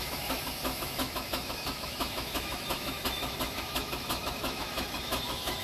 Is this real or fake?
fake